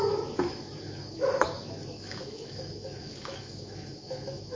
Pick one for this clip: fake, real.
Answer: fake